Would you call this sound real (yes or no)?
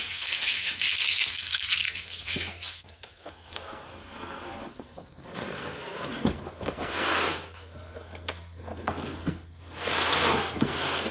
no